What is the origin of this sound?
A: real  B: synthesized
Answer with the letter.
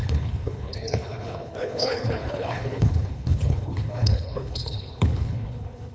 B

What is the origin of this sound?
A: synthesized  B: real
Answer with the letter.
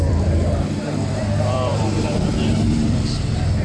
A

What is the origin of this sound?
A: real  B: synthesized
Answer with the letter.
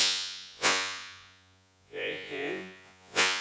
B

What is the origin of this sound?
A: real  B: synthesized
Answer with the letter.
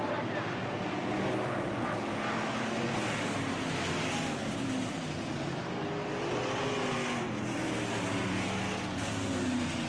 A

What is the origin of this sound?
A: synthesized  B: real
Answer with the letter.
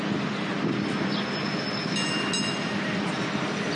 B